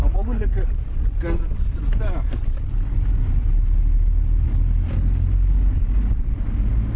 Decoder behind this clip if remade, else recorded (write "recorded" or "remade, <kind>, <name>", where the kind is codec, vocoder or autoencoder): recorded